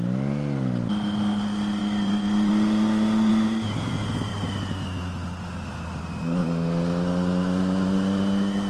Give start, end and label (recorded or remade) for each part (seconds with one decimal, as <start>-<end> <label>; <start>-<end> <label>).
0.0-1.8 recorded; 1.8-2.5 remade; 2.5-3.3 recorded; 3.3-3.9 remade; 3.9-8.7 recorded